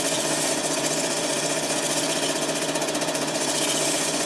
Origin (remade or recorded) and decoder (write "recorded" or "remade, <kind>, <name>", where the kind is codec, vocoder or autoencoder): remade, vocoder, Vocos